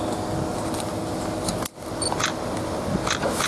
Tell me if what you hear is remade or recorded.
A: recorded